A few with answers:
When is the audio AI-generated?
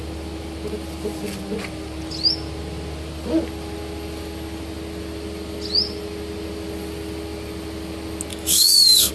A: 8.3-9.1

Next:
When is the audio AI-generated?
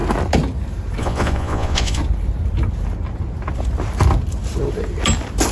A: 1.0-2.0